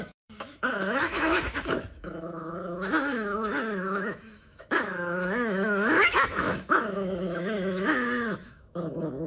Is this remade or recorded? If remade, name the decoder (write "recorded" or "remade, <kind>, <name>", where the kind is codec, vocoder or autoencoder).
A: remade, autoencoder, DAC-VAE